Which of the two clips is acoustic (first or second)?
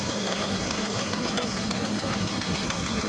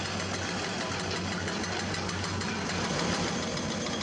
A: second